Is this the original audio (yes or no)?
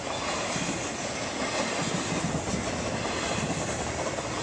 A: yes